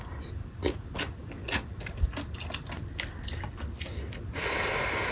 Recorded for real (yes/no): yes